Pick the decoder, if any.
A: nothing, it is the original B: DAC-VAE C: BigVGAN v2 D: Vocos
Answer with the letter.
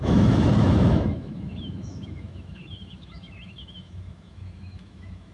B